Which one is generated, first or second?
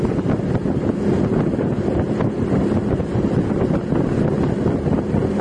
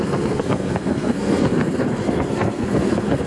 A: second